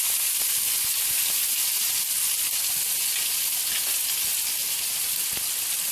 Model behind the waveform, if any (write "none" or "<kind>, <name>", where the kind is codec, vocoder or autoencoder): none